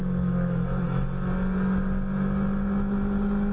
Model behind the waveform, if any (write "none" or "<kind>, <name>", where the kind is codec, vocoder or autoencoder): none